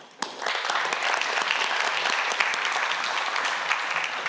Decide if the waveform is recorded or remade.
recorded